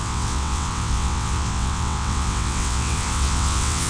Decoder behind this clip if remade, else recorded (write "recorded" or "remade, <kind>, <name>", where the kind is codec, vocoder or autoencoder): remade, vocoder, WaveNeXt